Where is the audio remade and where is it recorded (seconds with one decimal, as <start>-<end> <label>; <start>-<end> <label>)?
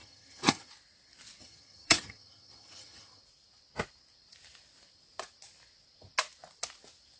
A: 0.0-0.7 remade; 0.7-1.4 recorded; 1.4-3.2 remade; 3.2-7.2 recorded